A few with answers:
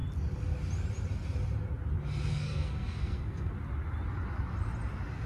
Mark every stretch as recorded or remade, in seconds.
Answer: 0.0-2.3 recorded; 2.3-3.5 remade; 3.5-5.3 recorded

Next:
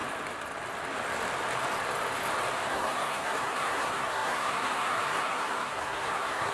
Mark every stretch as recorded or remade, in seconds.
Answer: 0.0-2.7 recorded; 2.7-6.5 remade